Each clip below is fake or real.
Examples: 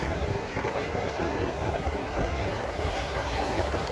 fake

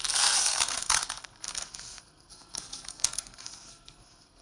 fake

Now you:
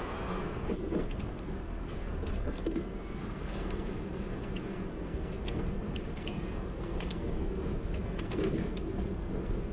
fake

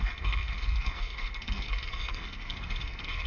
fake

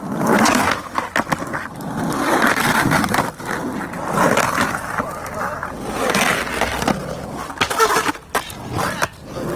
real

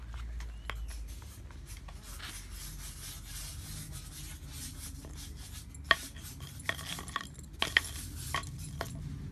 real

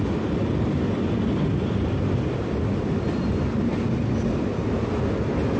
real